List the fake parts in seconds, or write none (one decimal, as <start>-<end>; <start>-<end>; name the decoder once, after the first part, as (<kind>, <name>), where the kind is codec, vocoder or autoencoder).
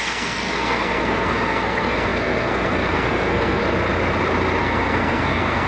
0.0-3.6 (codec, SNAC); 4.6-5.7